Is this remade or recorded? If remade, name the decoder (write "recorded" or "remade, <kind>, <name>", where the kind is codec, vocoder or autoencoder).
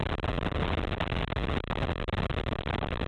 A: recorded